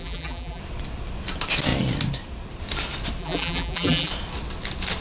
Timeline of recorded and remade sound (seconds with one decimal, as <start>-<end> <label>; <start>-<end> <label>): 0.0-0.6 remade; 0.6-3.2 recorded; 3.2-4.1 remade; 4.1-5.0 recorded